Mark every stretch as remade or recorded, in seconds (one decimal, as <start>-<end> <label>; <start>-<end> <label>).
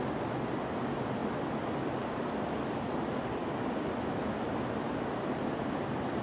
0.0-6.2 recorded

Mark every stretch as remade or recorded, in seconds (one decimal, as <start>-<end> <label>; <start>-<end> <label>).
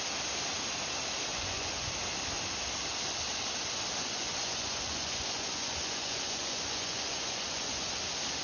0.0-1.3 recorded; 1.3-1.9 remade; 1.9-4.0 recorded; 4.0-7.9 remade; 7.9-8.4 recorded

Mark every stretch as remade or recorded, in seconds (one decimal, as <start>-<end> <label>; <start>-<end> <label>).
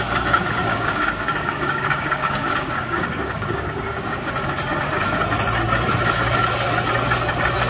0.0-0.6 recorded; 0.6-4.3 remade; 4.3-7.7 recorded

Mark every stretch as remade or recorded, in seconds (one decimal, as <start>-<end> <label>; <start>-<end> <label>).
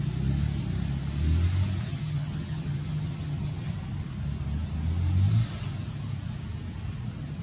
0.0-1.9 recorded; 1.9-3.7 remade; 3.7-7.4 recorded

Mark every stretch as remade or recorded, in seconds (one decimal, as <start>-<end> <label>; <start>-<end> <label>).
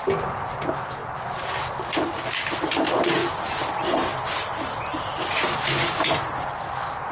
0.0-7.1 recorded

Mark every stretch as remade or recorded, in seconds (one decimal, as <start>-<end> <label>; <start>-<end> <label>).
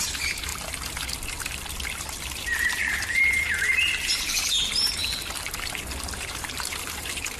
0.0-0.5 remade; 0.5-2.0 recorded; 2.0-5.0 remade; 5.0-6.1 recorded; 6.1-7.4 remade